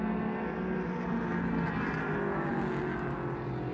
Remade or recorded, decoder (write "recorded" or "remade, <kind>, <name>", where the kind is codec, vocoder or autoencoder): recorded